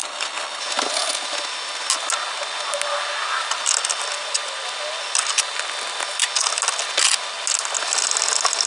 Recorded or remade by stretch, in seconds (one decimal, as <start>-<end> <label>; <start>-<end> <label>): 0.0-0.6 remade; 0.6-8.7 recorded